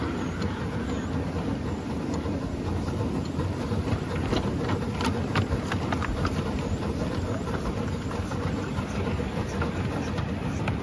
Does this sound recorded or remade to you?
recorded